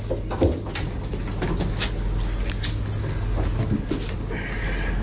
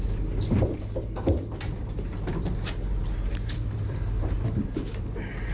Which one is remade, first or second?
second